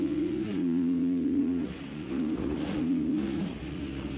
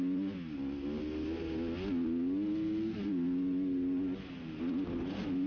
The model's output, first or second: first